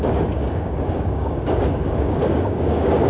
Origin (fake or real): fake